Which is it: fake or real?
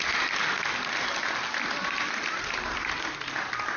real